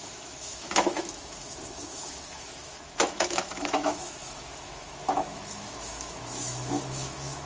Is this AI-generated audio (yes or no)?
yes